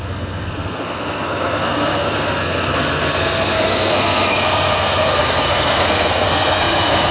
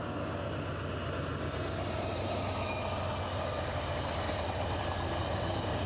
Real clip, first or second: second